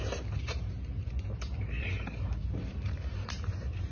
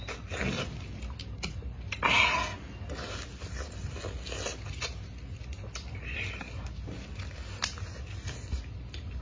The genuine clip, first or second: second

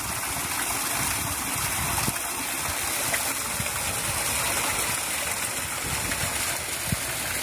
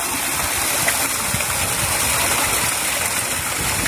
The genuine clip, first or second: first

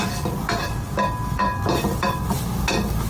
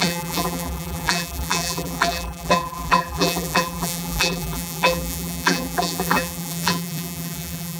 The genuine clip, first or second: first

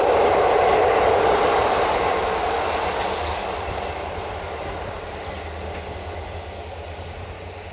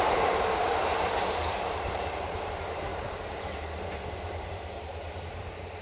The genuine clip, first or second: first